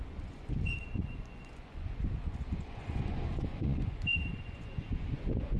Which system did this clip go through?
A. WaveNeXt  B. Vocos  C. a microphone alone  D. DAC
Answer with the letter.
B